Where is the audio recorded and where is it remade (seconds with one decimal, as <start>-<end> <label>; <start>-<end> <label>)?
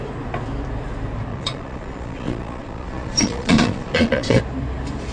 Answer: 0.0-1.3 recorded; 1.3-4.4 remade; 4.4-5.1 recorded